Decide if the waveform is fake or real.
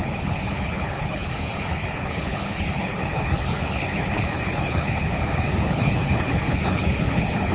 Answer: fake